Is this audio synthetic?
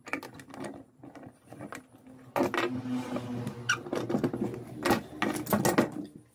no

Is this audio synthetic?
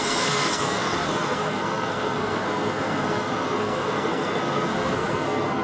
yes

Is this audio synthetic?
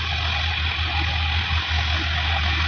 no